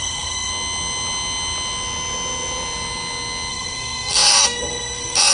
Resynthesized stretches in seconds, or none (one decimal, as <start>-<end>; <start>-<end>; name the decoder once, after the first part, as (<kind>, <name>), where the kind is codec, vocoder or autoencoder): 0.0-0.5 (codec, SNAC); 3.5-5.3